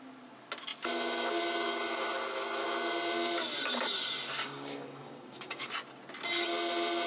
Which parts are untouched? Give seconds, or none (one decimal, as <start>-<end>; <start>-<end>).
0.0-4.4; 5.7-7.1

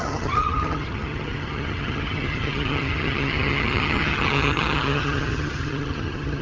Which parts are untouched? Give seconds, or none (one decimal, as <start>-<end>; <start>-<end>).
none

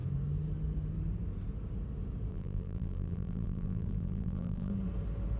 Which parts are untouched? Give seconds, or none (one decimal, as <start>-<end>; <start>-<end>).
0.0-2.3; 4.7-5.4

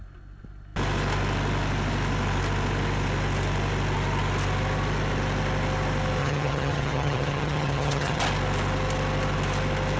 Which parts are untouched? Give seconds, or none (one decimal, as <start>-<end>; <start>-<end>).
0.0-6.2; 8.2-10.0

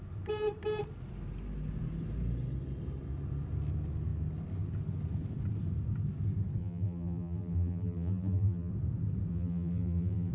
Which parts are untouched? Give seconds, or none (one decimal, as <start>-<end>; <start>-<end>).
0.0-6.6; 8.7-9.3

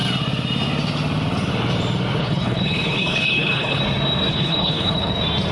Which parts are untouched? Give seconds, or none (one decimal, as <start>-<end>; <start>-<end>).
0.0-2.2; 3.8-4.3; 5.1-5.5

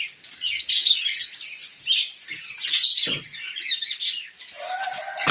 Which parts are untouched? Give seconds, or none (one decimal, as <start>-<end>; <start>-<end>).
0.0-5.3

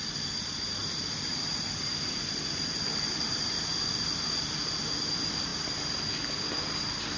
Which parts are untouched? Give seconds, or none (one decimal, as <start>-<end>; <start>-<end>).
0.0-0.8; 2.1-7.2